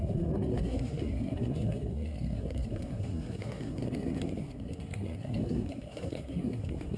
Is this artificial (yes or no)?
yes